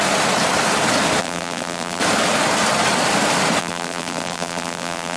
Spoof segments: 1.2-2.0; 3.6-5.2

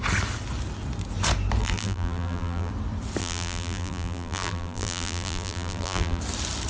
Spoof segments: 1.6-2.7; 3.2-6.2

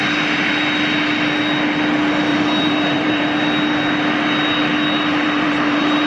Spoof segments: 2.3-3.2; 5.1-6.1

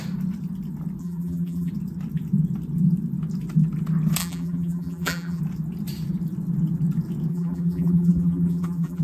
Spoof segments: 1.0-1.7; 4.2-5.4; 7.3-9.0

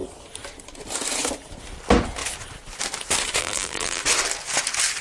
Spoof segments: 3.4-4.0

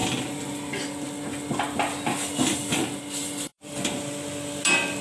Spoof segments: 3.2-3.8

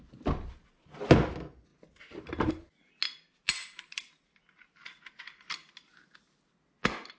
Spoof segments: 1.7-2.5; 3.6-4.1; 4.8-5.7

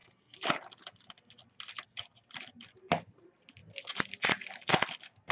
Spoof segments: none